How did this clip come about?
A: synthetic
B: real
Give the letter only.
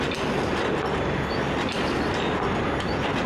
B